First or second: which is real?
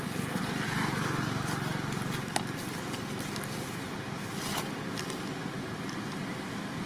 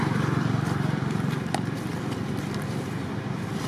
first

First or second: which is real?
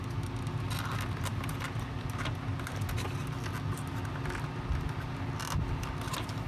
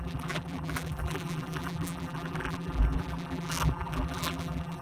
first